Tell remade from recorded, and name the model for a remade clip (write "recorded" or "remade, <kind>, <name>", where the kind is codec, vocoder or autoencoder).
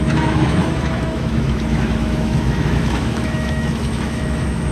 remade, autoencoder, DAC-VAE